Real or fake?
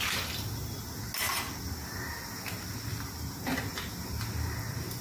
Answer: real